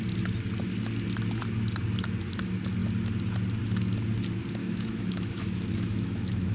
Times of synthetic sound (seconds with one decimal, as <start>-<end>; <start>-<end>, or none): 4.6-6.5

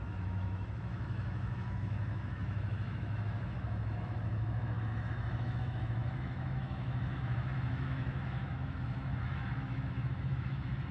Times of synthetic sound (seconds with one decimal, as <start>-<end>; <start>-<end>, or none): 0.0-10.9

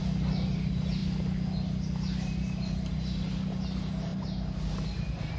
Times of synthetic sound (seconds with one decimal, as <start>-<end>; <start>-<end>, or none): none

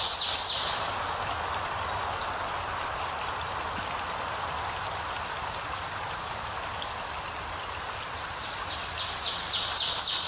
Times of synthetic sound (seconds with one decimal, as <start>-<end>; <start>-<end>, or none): none

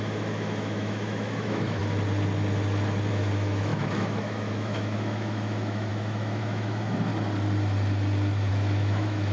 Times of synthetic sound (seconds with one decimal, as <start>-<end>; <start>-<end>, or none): 0.0-1.8; 3.1-7.1; 8.5-9.3

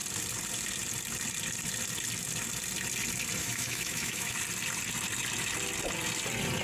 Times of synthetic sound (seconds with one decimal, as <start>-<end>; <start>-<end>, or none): 3.4-4.4

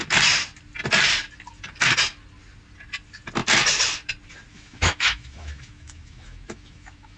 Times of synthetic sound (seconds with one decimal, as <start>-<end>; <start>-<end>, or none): 4.5-7.2

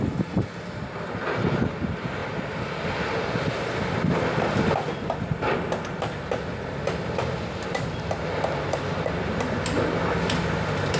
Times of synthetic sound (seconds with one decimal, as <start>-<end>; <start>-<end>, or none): none